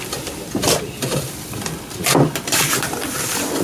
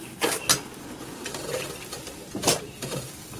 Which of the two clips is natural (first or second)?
second